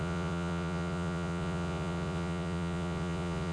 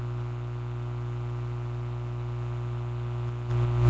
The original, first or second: second